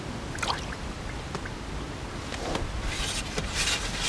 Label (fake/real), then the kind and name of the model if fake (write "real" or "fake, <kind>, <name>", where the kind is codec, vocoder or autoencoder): real